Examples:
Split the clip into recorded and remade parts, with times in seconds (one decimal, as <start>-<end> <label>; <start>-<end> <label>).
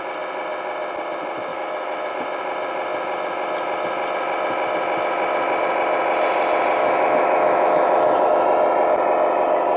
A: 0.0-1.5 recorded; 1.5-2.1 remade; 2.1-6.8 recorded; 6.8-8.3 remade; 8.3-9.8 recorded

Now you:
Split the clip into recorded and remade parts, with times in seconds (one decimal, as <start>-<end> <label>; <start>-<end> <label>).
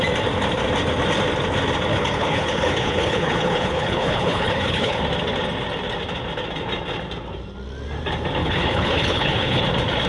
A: 0.0-1.9 recorded; 1.9-5.0 remade; 5.0-8.4 recorded; 8.4-9.6 remade; 9.6-10.1 recorded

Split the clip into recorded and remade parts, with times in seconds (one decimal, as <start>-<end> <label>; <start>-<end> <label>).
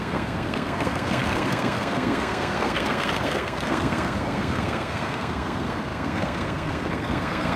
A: 0.0-7.6 remade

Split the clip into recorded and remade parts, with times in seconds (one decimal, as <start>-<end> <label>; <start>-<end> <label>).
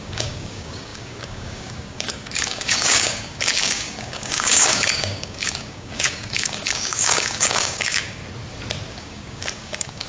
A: 0.0-8.2 remade; 8.2-8.9 recorded; 8.9-10.1 remade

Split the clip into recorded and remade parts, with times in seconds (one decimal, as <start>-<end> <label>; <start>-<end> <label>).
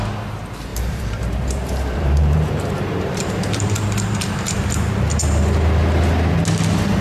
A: 0.0-0.7 recorded; 0.7-4.9 remade; 4.9-7.0 recorded